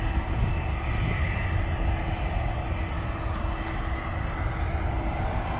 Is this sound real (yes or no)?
yes